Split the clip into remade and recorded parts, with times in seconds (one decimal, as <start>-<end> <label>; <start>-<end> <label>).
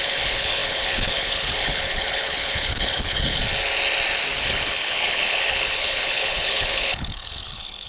0.0-3.4 remade; 3.4-4.4 recorded; 4.4-7.9 remade